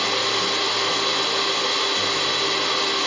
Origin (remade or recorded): recorded